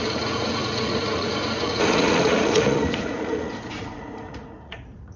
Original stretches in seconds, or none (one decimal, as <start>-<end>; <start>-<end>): none